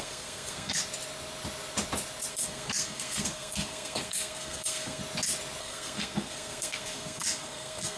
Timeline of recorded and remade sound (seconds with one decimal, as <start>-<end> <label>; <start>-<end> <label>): 0.0-0.8 remade; 0.8-2.3 recorded; 2.3-5.0 remade; 5.0-5.6 recorded; 5.6-8.0 remade